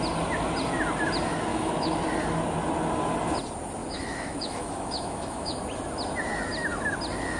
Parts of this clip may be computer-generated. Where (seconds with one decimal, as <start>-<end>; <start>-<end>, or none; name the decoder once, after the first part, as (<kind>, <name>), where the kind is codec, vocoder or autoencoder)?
1.5-2.0 (autoencoder, DAC-VAE); 3.8-5.6